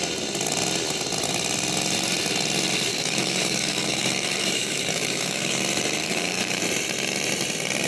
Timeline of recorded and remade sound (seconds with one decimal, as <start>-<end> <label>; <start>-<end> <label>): 0.0-2.9 recorded; 2.9-5.6 remade; 5.6-6.0 recorded; 6.0-6.6 remade; 6.6-7.9 recorded